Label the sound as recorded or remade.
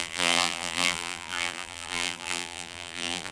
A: remade